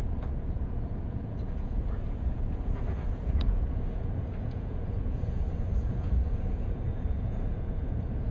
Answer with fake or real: fake